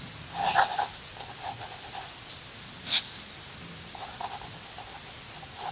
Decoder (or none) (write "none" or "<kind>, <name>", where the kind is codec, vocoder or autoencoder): none